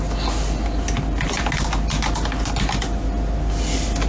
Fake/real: real